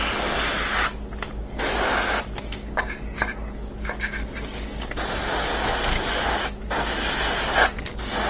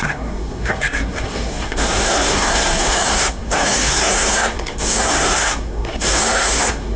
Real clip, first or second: first